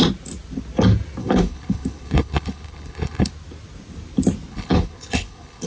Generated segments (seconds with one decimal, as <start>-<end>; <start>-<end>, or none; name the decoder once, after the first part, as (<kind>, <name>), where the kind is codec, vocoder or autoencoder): 1.2-3.3 (codec, HILCodec); 4.5-5.7